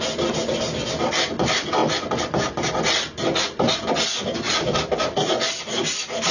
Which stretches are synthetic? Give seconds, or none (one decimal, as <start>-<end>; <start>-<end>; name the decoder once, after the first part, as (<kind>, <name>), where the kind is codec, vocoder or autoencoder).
none